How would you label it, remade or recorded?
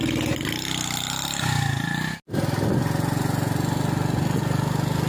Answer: recorded